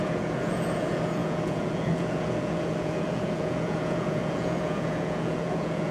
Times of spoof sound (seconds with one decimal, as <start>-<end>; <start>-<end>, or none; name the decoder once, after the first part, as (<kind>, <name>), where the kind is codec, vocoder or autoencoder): 0.0-5.9 (vocoder, Vocos)